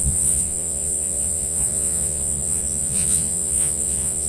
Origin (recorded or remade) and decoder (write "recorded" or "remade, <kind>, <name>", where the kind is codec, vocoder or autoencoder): remade, vocoder, Vocos